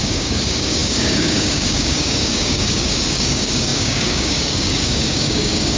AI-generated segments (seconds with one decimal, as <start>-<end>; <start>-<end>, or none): 0.0-5.8

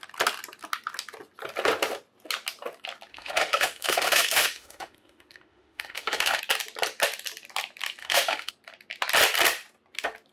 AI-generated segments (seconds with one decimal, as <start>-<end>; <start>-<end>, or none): 3.1-6.4; 8.0-8.5